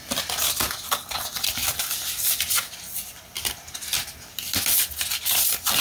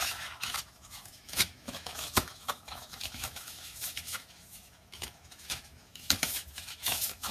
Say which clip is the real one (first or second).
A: first